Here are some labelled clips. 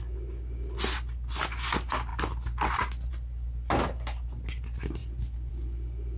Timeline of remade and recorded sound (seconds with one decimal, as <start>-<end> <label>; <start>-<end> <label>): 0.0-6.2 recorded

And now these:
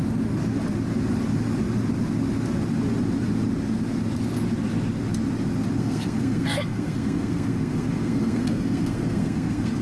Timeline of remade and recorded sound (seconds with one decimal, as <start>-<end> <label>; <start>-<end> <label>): 0.0-5.7 recorded; 5.7-9.8 remade

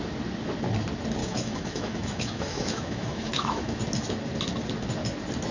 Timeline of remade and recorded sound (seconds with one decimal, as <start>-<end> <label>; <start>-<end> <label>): 0.0-1.2 recorded; 1.2-3.8 remade; 3.8-5.5 recorded

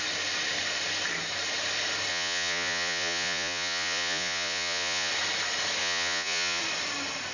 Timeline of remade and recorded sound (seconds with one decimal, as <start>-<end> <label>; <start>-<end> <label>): 0.0-2.1 recorded; 2.1-5.1 remade; 5.1-5.8 recorded; 5.8-6.6 remade; 6.6-7.3 recorded

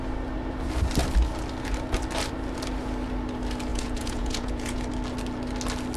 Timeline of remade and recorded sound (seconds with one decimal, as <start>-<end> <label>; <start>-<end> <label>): 0.0-3.7 recorded; 3.7-4.8 remade; 4.8-6.0 recorded

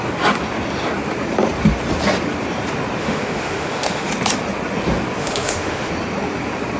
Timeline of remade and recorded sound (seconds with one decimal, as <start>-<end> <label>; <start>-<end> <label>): 0.0-3.0 recorded; 3.0-4.1 remade; 4.1-5.2 recorded; 5.2-5.9 remade; 5.9-6.8 recorded